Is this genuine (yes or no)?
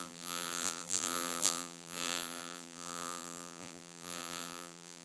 no